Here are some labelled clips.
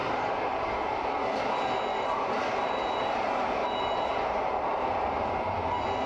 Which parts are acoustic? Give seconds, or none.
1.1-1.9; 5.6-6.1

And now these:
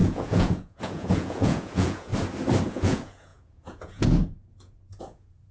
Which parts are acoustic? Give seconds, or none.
2.1-2.6

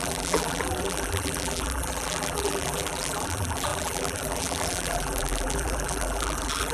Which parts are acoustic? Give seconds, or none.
none

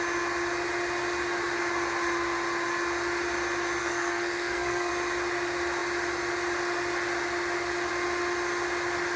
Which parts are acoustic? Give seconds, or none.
0.0-3.8; 4.9-9.2